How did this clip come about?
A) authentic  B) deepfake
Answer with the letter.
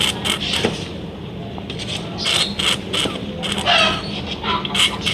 A